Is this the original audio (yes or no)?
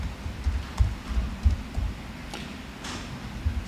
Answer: yes